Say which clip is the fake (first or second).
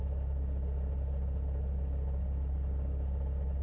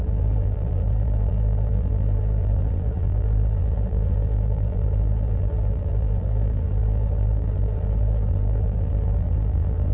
second